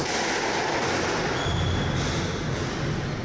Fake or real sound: real